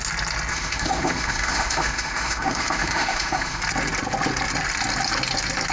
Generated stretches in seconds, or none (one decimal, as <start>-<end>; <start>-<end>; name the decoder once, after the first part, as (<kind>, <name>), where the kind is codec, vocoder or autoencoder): 0.5-3.6 (autoencoder, DAC-VAE)